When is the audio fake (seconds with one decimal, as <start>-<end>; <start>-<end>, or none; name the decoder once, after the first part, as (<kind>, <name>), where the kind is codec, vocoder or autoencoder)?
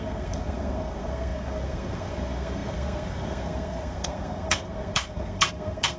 0.0-6.0 (codec, SNAC)